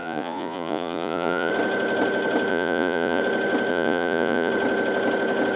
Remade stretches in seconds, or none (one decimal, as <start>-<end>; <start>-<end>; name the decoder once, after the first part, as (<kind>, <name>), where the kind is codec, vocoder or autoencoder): 0.0-1.5 (vocoder, Vocos); 2.5-3.2; 3.7-4.5